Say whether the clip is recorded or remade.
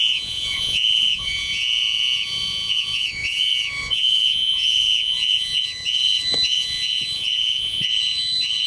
remade